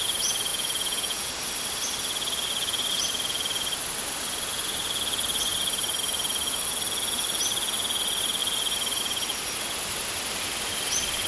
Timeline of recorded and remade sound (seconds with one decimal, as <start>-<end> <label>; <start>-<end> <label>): 0.0-0.5 recorded; 0.5-1.3 remade; 1.3-11.3 recorded